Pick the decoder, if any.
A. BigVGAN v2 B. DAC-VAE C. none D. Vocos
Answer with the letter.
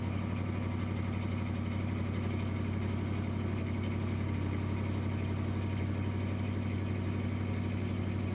C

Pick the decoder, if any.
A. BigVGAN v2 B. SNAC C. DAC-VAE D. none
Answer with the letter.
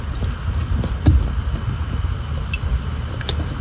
D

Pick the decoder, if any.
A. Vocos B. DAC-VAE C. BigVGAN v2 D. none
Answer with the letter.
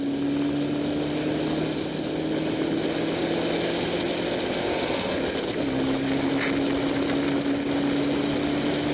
D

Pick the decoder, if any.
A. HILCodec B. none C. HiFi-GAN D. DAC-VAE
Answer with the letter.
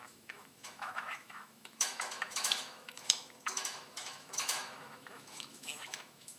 D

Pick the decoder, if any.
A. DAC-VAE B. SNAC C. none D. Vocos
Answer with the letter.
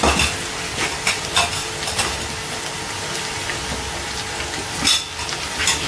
C